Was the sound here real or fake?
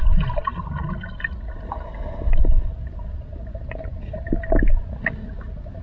real